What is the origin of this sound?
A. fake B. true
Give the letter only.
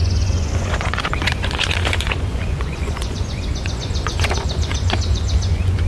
A